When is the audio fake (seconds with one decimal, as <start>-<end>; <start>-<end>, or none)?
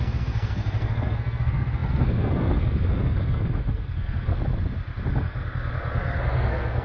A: 0.0-4.4; 5.1-6.8